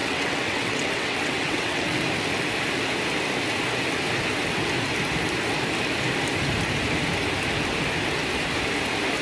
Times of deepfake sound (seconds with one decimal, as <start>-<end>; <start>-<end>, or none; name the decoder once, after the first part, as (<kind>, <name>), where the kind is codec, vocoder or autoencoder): 0.0-2.0 (vocoder, WaveNeXt)